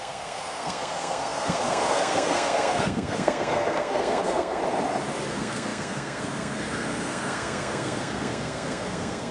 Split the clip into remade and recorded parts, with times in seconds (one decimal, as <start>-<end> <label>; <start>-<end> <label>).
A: 0.0-4.6 remade; 4.6-5.3 recorded; 5.3-9.3 remade